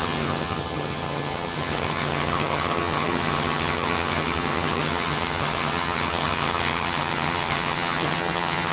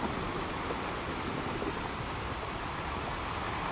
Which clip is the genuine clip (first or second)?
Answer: second